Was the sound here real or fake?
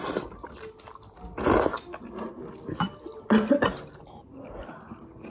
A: real